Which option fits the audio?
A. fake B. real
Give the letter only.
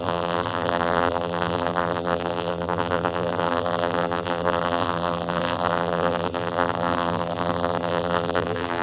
A